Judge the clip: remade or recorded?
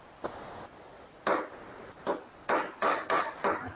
recorded